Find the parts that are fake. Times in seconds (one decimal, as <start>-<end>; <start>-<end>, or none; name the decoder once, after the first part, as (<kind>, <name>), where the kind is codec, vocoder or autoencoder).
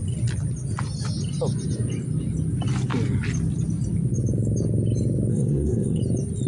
5.3-6.0 (codec, SNAC)